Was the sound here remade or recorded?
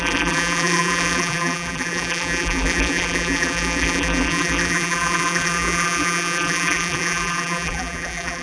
remade